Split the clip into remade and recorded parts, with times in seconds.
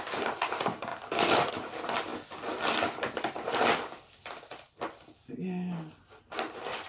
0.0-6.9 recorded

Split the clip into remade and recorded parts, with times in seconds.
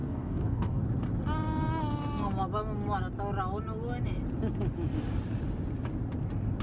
0.0-0.8 remade; 0.8-6.6 recorded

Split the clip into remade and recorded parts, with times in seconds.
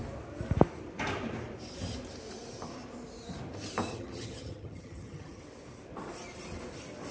0.0-3.9 recorded; 3.9-5.4 remade; 5.4-7.1 recorded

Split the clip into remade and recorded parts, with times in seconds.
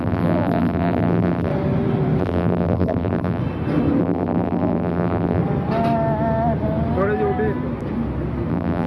0.0-1.5 remade; 1.5-2.2 recorded; 2.2-3.4 remade; 3.4-4.0 recorded; 4.0-5.4 remade; 5.4-8.5 recorded; 8.5-8.9 remade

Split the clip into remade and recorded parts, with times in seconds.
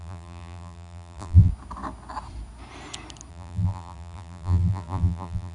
0.0-1.5 remade; 1.5-3.3 recorded; 3.3-5.5 remade